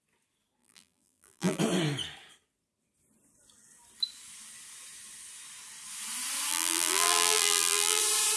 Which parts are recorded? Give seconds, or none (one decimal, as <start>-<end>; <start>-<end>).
0.0-0.6; 1.6-6.5; 8.0-8.4